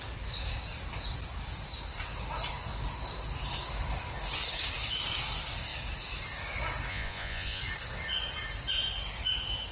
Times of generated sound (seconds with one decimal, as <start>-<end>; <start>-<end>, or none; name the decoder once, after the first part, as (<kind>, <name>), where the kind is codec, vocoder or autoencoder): 6.9-7.6 (vocoder, Vocos)